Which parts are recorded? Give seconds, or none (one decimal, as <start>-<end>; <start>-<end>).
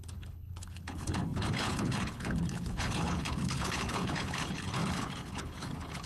none